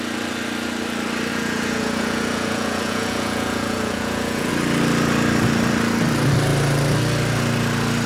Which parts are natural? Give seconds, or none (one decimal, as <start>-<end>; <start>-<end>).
0.0-1.3; 4.5-8.1